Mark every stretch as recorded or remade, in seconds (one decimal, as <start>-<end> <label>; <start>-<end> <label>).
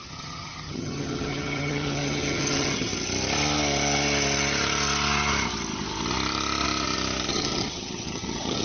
0.0-2.9 remade; 2.9-7.3 recorded; 7.3-8.6 remade